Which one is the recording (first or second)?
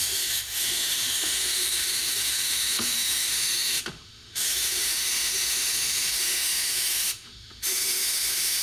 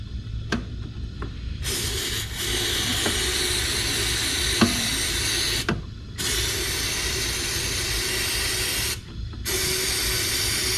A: second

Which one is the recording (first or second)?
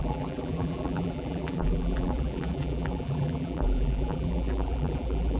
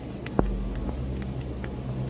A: second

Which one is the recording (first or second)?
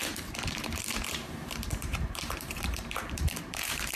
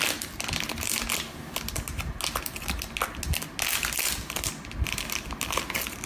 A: second